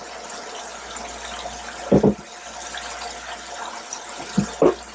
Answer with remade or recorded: recorded